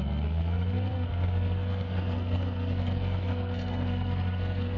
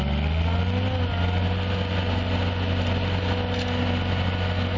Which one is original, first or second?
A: second